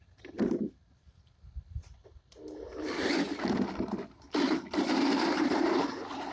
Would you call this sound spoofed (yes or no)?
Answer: no